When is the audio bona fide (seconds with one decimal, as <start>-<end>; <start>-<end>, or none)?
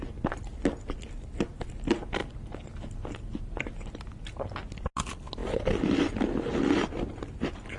0.0-7.8